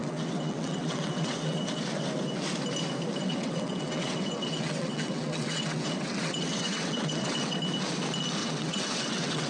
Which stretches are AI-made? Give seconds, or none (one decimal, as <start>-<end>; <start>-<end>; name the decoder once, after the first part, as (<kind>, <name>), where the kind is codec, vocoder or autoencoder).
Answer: 0.0-1.7 (vocoder, WaveNeXt); 3.2-7.6; 8.4-9.5